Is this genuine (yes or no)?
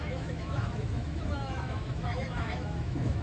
no